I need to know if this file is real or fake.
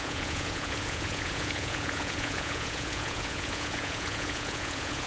fake